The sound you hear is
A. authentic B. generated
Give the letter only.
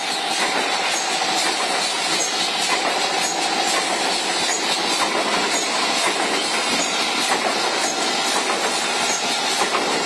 A